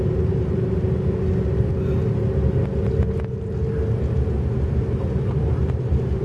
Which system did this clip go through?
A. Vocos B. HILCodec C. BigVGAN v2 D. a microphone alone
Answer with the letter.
D